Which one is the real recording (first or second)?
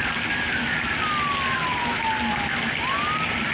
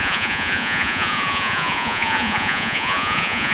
first